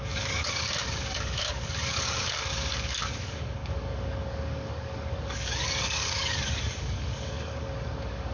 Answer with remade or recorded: remade